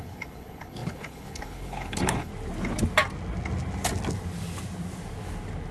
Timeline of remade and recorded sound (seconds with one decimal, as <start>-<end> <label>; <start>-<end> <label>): 0.0-2.3 remade; 2.3-5.7 recorded